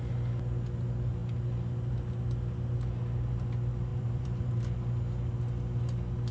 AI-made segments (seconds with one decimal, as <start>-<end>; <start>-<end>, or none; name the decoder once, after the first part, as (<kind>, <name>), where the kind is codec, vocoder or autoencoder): 3.9-4.6 (vocoder, BigVGAN v2)